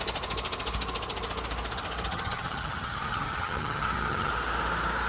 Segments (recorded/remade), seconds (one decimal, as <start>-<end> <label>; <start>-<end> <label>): 0.0-2.1 recorded; 2.1-4.3 remade; 4.3-5.1 recorded